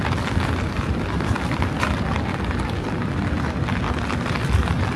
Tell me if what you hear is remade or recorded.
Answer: remade